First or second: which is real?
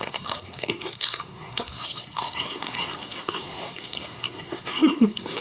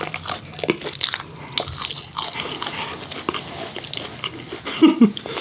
second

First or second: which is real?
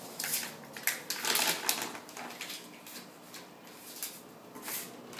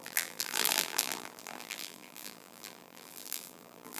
first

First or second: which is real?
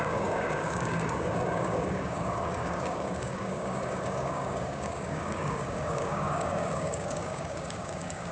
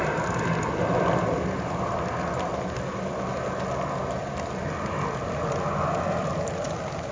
second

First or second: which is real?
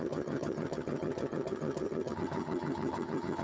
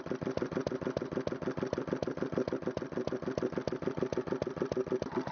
second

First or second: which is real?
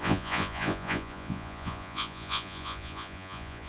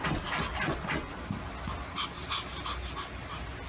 second